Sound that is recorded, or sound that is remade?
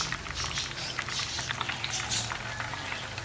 recorded